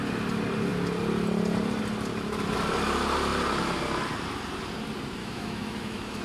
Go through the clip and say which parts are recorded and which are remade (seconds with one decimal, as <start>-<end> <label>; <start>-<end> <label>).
0.0-5.2 recorded; 5.2-6.2 remade